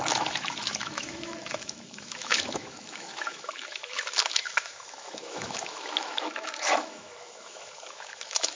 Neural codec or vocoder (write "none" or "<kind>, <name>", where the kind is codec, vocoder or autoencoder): autoencoder, DAC-VAE